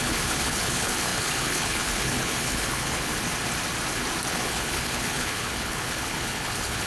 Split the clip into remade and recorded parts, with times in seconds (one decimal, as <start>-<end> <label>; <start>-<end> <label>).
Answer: 0.0-3.1 remade; 3.1-4.3 recorded; 4.3-6.9 remade